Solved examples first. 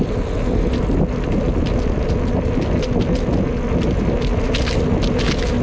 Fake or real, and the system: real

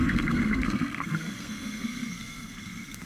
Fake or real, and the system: fake, codec, SNAC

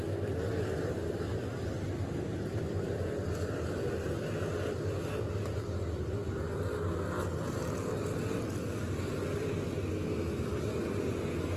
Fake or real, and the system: real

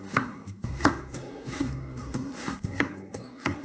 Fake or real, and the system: fake, codec, SNAC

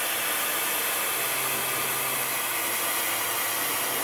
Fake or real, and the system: real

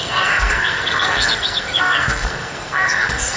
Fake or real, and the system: fake, codec, SNAC